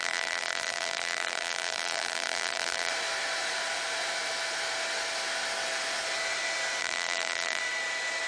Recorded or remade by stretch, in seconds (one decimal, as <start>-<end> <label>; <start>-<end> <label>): 0.0-2.9 remade; 2.9-6.8 recorded; 6.8-7.6 remade; 7.6-8.3 recorded